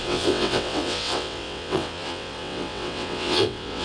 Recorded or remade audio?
remade